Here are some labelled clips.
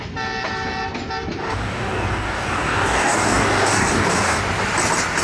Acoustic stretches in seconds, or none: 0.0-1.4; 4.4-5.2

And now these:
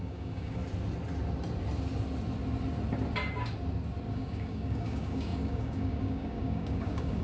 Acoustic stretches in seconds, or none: 0.6-4.1

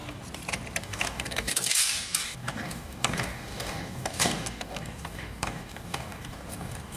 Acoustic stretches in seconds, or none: 0.0-0.8